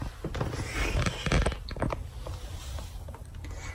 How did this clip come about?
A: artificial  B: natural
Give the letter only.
B